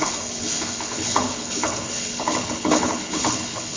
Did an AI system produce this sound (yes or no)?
yes